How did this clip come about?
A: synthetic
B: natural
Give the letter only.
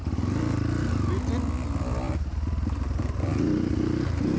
B